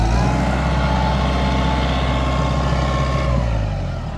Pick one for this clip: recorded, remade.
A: recorded